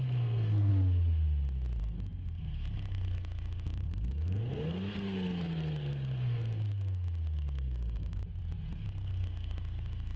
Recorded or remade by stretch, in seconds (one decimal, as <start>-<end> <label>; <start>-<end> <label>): 0.0-0.7 remade; 0.7-1.8 recorded; 1.8-8.2 remade; 8.2-8.7 recorded; 8.7-10.2 remade